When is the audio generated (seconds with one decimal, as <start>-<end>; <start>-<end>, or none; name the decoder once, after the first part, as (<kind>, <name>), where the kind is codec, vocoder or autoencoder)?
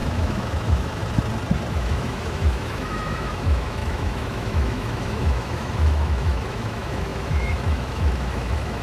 0.0-1.0 (autoencoder, DAC-VAE); 1.7-8.8